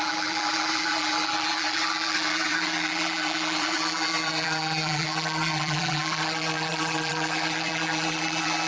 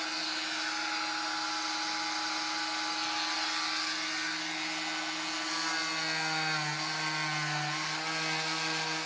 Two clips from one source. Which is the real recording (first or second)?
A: second